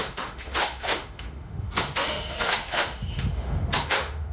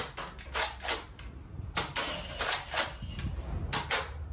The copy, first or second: first